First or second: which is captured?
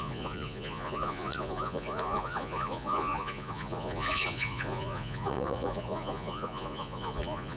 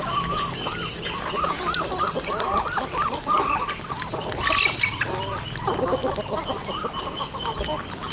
second